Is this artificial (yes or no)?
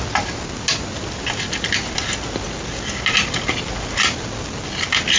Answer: no